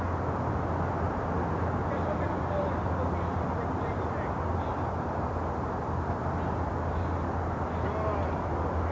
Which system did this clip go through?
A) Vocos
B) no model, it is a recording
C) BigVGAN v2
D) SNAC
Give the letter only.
B